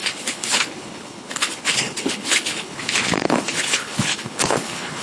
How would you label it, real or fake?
fake